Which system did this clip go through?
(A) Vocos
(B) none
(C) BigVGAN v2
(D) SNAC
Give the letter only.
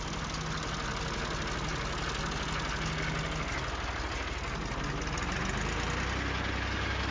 B